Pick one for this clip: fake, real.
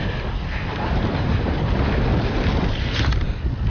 real